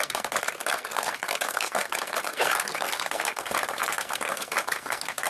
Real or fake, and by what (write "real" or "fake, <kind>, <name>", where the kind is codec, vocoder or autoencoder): fake, codec, SNAC